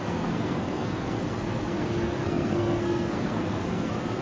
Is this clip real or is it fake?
fake